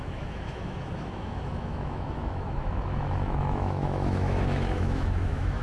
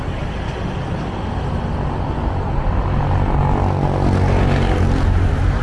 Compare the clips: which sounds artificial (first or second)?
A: first